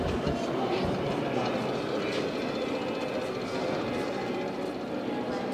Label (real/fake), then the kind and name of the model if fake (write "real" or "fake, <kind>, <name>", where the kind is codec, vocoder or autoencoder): real